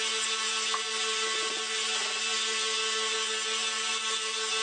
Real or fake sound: real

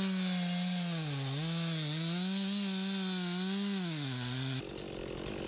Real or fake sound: real